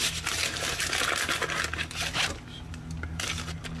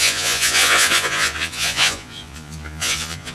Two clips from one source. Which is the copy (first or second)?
second